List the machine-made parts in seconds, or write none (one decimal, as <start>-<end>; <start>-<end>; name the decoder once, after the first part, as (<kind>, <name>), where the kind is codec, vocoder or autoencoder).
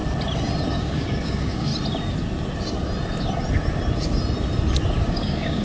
0.8-1.7 (codec, DAC); 5.1-5.6